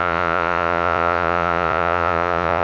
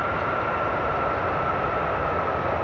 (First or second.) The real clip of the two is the second